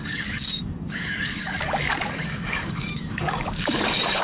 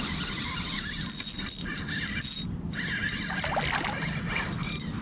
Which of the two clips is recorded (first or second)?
second